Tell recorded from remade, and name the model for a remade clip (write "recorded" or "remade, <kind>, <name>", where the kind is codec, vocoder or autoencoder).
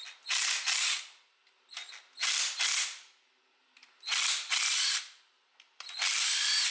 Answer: recorded